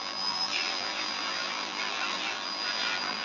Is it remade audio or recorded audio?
remade